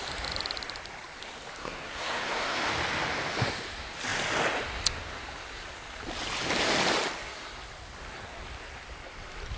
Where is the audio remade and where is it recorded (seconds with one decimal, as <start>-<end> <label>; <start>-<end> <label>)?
0.0-1.6 recorded; 1.6-2.7 remade; 2.7-9.6 recorded